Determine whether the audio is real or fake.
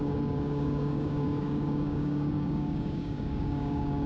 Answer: fake